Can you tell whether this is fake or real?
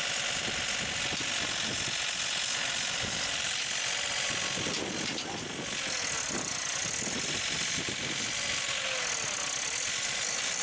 real